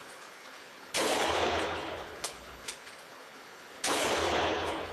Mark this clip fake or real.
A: fake